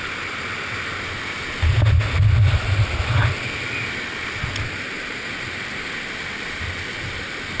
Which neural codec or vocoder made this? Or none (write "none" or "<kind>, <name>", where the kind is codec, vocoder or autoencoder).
none